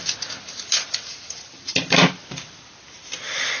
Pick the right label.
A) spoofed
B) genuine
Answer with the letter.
B